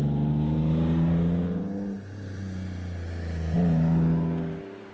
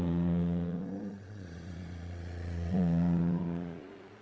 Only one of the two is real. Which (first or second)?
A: first